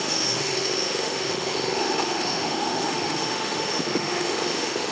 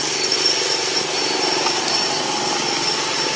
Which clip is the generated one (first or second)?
first